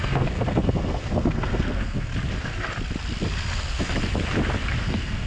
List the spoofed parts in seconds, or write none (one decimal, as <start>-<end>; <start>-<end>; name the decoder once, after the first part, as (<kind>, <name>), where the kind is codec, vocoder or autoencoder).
0.0-2.1 (codec, SNAC); 4.8-5.3